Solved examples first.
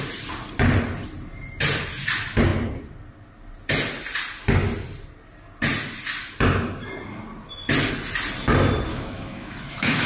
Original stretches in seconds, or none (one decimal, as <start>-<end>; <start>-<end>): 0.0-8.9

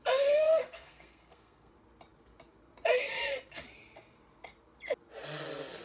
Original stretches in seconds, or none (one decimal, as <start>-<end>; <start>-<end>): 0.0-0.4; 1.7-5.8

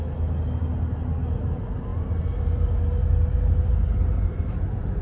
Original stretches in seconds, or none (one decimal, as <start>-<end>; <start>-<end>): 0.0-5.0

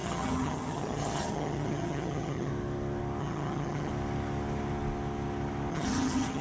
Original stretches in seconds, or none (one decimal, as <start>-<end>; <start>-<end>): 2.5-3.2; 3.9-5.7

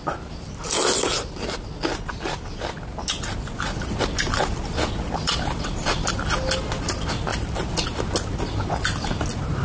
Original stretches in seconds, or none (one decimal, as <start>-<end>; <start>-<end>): 0.0-5.2; 5.8-7.3; 8.0-9.6

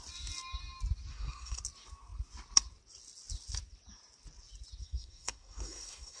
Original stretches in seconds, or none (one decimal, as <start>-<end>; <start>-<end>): 0.0-1.1; 1.6-4.8

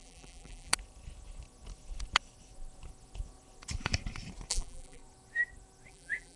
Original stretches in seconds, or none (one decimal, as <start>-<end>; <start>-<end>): 0.7-4.5; 5.0-5.9